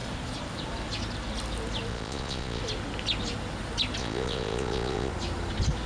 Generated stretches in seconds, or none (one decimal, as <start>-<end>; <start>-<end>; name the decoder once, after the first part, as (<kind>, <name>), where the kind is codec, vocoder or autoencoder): 1.9-2.6 (vocoder, Vocos); 4.0-5.1